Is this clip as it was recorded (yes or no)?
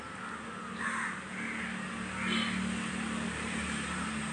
yes